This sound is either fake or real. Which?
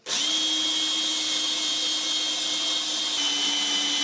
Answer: real